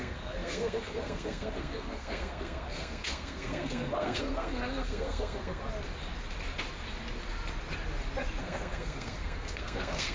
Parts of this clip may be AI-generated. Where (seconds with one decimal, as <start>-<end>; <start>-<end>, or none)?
0.0-5.6; 8.4-10.1